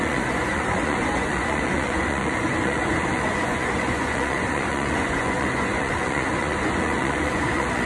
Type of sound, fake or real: fake